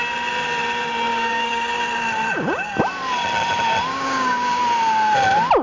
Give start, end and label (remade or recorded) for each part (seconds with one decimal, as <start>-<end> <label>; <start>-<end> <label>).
0.0-1.1 recorded; 1.1-1.8 remade; 1.8-3.9 recorded; 3.9-4.6 remade; 4.6-5.6 recorded